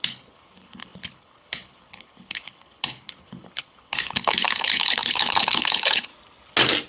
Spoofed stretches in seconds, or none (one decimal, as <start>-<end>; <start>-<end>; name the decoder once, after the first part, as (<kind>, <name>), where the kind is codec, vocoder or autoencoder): 0.0-6.1 (codec, HILCodec)